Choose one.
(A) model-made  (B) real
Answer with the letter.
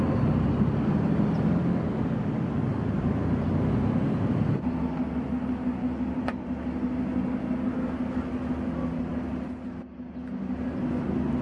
B